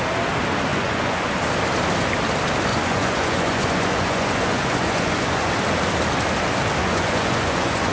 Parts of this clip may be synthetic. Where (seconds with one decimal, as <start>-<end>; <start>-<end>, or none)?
0.7-1.3; 2.7-5.5; 6.8-7.9